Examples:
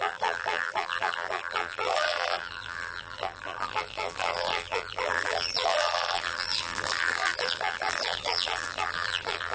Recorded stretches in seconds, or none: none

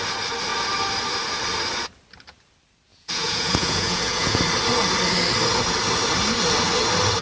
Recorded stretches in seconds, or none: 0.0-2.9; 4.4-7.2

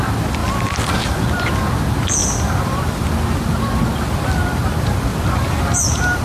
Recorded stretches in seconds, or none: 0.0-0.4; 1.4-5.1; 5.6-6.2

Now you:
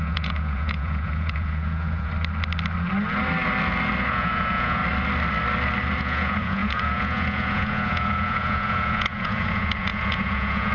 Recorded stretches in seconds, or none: 2.1-4.1; 4.8-6.0

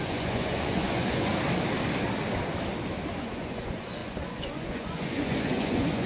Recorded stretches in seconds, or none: 1.3-3.1

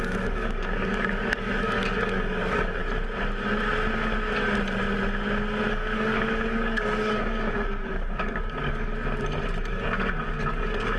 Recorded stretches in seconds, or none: 2.8-5.7; 8.9-9.7

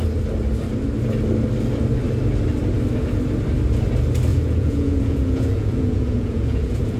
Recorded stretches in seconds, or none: 0.0-4.3